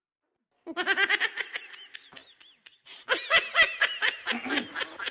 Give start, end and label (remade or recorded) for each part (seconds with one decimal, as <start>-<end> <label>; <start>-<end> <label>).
0.0-5.1 recorded